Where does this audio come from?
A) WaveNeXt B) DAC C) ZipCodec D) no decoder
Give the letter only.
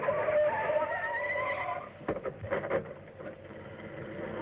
D